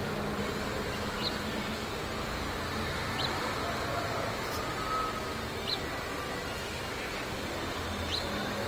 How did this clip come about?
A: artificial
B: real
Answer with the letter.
B